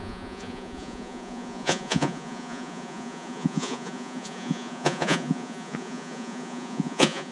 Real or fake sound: fake